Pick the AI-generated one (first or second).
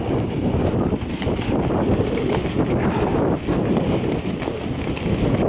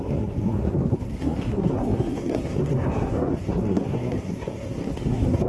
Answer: second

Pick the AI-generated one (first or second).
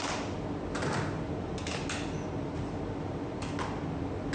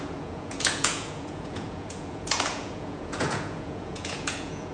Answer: second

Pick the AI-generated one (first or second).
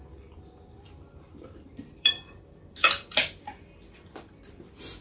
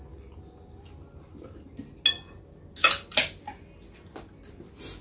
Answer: first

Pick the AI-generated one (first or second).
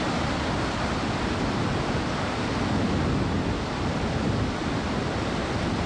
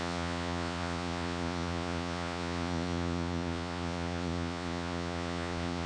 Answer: second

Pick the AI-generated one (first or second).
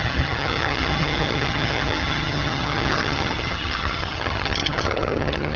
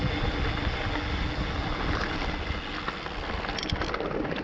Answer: first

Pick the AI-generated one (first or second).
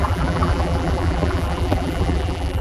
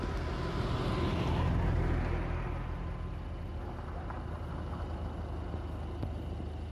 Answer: first